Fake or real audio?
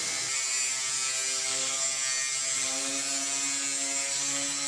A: real